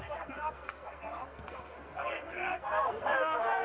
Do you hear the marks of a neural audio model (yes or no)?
yes